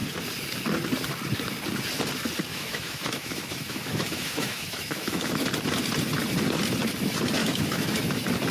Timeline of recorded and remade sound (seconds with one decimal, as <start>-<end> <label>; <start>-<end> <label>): 0.0-2.5 recorded; 2.5-5.3 remade; 5.3-7.4 recorded; 7.4-8.0 remade; 8.0-8.5 recorded